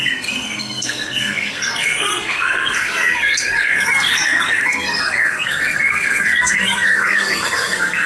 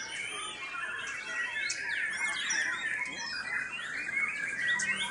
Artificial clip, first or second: first